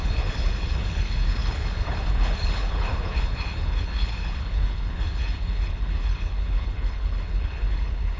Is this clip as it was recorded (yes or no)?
no